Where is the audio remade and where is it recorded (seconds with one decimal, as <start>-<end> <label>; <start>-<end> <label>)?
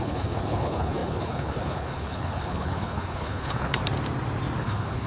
0.0-3.8 remade; 3.8-4.6 recorded; 4.6-5.1 remade